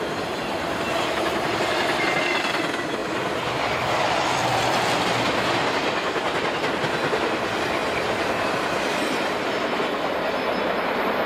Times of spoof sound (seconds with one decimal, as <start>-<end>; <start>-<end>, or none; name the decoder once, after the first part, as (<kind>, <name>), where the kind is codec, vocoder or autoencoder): none